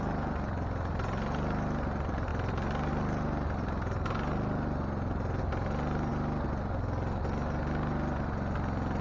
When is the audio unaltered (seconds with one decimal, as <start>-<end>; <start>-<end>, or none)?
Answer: 0.0-9.0